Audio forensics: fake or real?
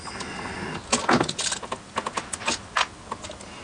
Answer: real